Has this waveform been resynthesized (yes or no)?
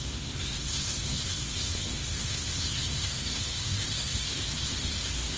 yes